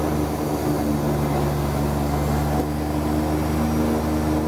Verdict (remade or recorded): recorded